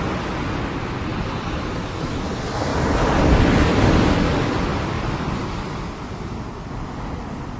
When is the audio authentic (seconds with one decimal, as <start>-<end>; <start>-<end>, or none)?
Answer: 0.0-1.1; 2.1-2.7; 3.3-4.7; 5.4-7.6